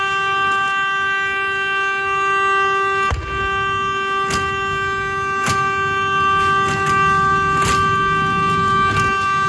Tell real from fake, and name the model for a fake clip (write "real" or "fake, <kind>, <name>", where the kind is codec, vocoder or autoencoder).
real